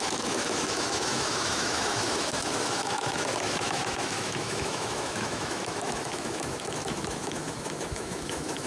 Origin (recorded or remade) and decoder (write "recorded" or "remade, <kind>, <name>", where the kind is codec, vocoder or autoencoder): remade, autoencoder, DAC-VAE